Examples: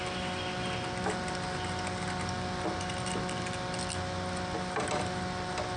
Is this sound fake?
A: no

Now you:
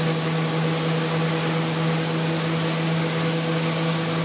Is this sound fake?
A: no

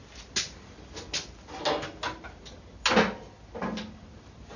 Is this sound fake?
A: no